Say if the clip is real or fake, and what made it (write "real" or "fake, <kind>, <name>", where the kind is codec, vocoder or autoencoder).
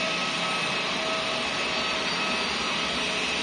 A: real